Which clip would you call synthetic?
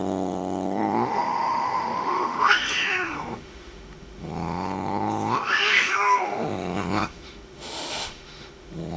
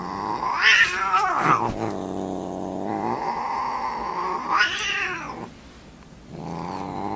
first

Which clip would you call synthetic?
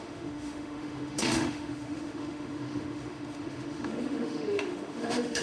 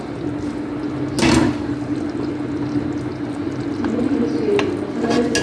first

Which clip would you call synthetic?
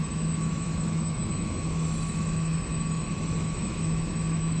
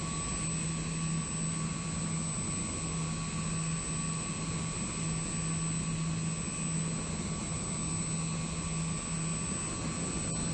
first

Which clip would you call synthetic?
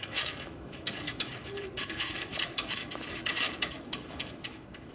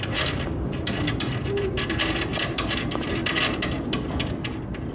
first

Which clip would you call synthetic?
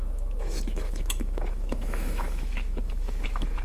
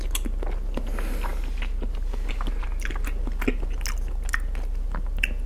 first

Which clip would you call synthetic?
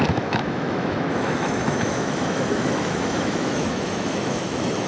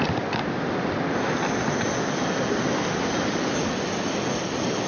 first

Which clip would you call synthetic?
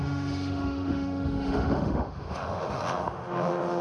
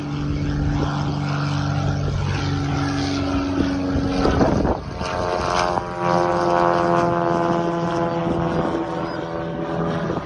first